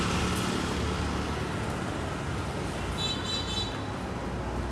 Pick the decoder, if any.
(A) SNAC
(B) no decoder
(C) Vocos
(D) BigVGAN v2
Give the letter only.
B